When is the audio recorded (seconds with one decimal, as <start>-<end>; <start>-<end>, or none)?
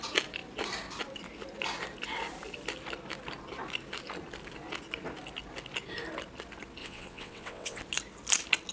0.0-6.8; 7.8-8.7